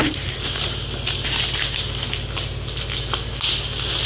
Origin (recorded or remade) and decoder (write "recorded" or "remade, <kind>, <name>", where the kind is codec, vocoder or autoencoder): recorded